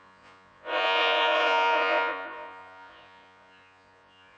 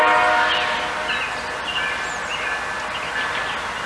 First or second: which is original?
second